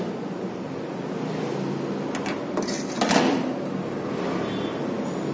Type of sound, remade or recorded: recorded